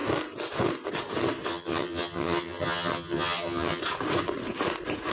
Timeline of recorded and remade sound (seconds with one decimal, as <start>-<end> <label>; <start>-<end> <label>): 0.0-1.5 recorded; 1.5-3.8 remade; 3.8-5.1 recorded

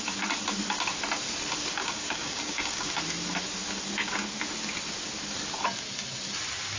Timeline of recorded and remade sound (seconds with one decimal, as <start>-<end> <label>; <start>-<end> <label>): 0.0-1.8 recorded; 1.8-2.9 remade; 2.9-6.8 recorded

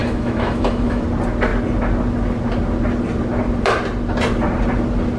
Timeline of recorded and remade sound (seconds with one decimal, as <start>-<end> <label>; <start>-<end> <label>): 0.0-1.0 remade; 1.0-5.2 recorded

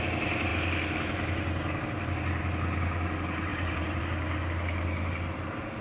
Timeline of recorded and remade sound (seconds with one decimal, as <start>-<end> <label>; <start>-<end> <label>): 0.0-3.5 recorded; 3.5-4.0 remade; 4.0-5.8 recorded

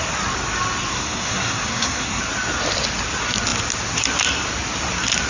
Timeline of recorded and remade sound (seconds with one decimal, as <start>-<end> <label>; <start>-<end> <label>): 0.0-0.9 recorded; 0.9-2.2 remade; 2.2-5.3 recorded

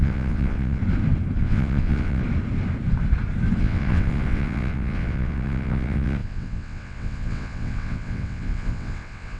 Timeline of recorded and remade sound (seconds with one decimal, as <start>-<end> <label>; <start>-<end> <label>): 0.0-0.8 remade; 0.8-1.4 recorded; 1.4-2.2 remade; 2.2-3.6 recorded; 3.6-9.4 remade